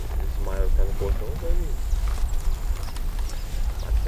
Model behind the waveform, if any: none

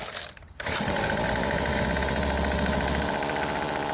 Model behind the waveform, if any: none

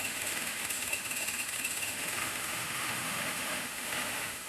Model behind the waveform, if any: autoencoder, DAC-VAE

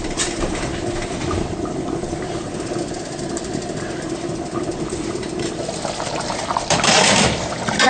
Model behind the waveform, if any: vocoder, BigVGAN v2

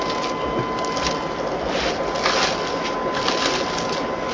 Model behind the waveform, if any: none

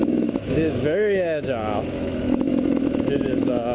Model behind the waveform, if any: autoencoder, DAC-VAE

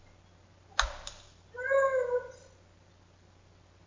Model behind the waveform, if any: none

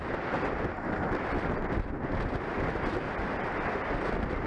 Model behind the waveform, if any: none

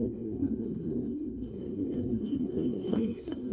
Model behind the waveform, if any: codec, SNAC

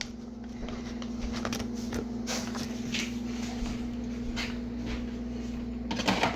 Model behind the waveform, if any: none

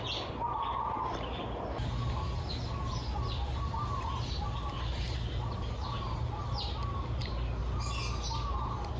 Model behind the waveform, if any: none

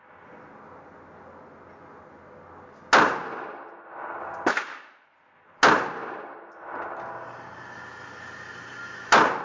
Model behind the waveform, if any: none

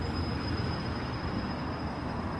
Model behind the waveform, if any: none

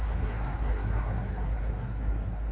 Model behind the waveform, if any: codec, SNAC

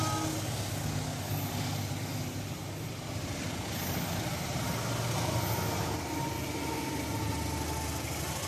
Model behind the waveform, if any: none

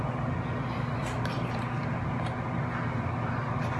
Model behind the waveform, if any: none